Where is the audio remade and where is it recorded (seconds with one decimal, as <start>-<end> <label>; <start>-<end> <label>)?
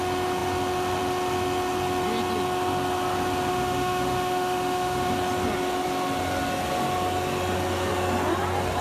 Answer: 0.0-3.5 recorded; 3.5-5.1 remade; 5.1-8.8 recorded